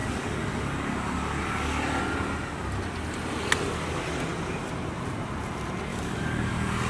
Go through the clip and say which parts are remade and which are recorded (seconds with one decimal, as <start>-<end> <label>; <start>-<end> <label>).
0.0-2.0 remade; 2.0-5.9 recorded; 5.9-6.9 remade